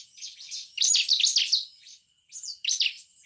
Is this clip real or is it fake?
real